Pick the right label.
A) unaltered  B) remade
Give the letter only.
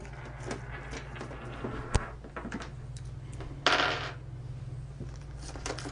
A